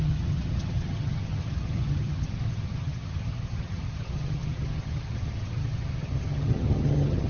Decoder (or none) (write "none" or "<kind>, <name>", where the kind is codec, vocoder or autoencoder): vocoder, HiFi-GAN